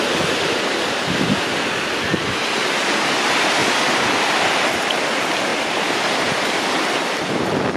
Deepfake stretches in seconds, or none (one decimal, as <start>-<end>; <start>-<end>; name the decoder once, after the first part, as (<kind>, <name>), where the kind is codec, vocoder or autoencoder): 3.6-4.2 (vocoder, BigVGAN v2); 5.5-6.7